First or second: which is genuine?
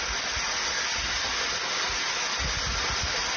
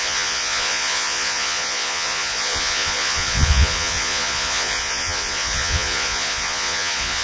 first